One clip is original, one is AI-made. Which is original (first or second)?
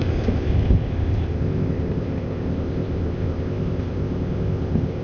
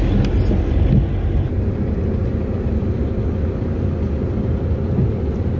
second